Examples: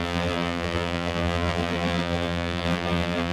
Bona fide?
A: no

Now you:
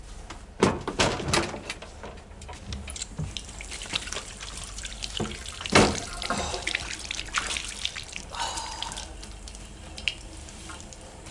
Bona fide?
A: no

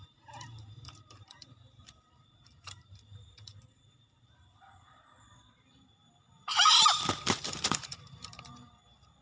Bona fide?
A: no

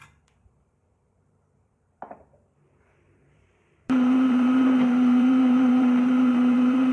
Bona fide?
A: no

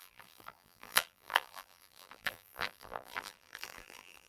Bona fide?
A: no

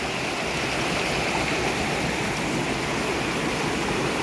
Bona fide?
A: yes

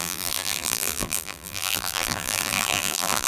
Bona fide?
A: no